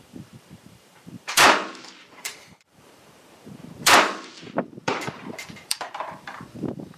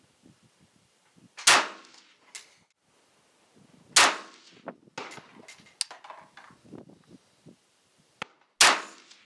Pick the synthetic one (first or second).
first